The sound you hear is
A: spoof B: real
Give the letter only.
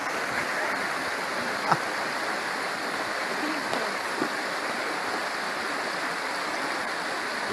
B